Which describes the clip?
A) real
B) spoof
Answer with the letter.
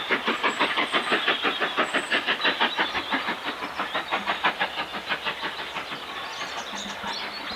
A